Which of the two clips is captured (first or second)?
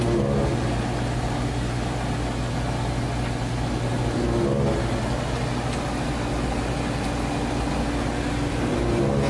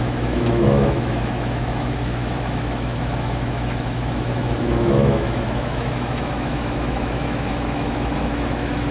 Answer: first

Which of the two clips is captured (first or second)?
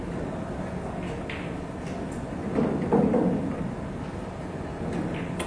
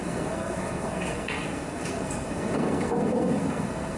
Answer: first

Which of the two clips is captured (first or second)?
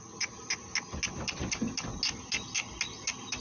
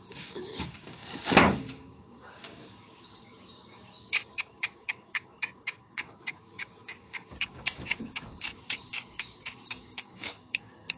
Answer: first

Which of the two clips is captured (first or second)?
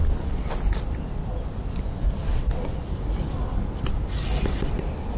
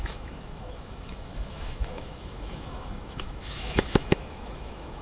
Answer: first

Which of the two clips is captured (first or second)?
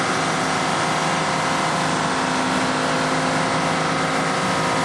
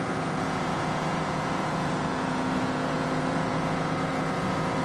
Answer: first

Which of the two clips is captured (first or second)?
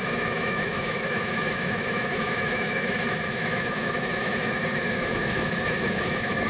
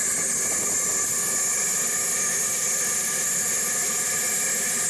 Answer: second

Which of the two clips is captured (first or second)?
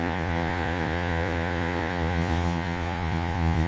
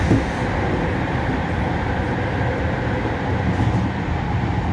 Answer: second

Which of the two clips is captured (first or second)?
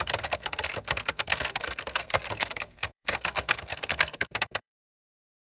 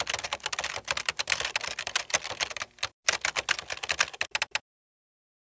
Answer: second